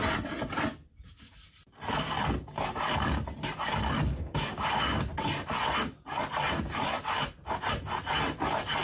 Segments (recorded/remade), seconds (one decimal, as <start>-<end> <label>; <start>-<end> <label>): 0.0-4.1 recorded; 4.1-4.9 remade; 4.9-8.8 recorded